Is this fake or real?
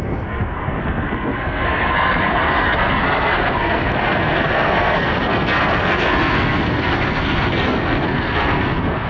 fake